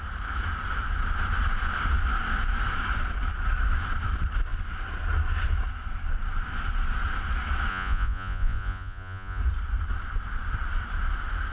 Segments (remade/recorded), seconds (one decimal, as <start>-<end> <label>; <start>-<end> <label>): 0.0-7.7 recorded; 7.7-9.4 remade; 9.4-11.5 recorded